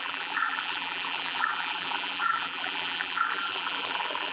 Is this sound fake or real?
fake